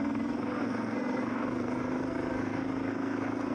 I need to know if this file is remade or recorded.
remade